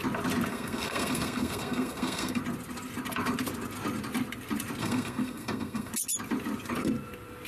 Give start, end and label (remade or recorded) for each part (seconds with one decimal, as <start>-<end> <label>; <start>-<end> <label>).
0.0-0.5 recorded; 0.5-2.4 remade; 2.4-4.8 recorded; 4.8-5.9 remade; 5.9-7.5 recorded